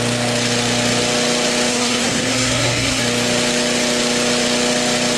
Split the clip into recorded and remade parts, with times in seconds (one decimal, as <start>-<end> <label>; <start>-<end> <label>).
0.0-1.7 recorded; 1.7-3.0 remade; 3.0-5.2 recorded